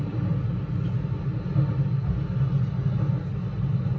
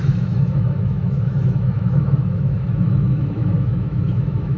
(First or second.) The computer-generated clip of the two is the second